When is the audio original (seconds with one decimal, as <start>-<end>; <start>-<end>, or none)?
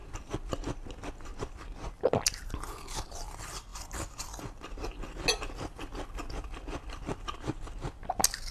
0.0-8.5